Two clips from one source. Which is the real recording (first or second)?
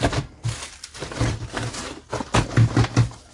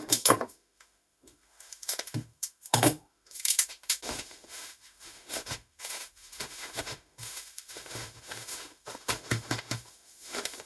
first